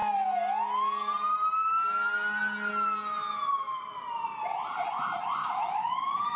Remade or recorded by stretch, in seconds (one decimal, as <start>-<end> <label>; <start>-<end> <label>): 0.0-5.4 recorded; 5.4-6.4 remade